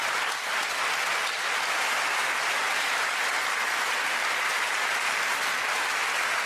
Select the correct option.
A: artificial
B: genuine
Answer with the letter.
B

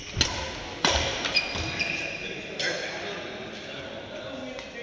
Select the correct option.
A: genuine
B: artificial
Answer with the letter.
A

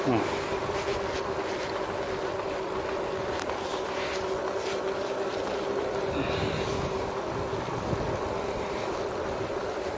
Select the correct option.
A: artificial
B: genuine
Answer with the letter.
B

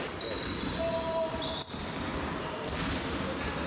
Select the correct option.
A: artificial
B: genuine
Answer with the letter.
B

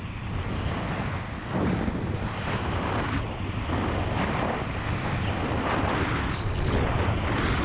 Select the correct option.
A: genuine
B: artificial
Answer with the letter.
A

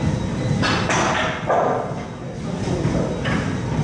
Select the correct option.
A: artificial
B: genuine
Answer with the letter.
B